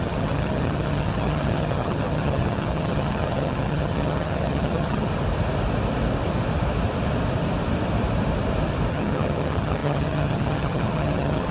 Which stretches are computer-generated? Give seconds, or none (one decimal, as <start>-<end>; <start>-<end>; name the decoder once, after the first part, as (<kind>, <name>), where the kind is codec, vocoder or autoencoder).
0.0-5.1 (vocoder, HiFi-GAN); 8.9-11.5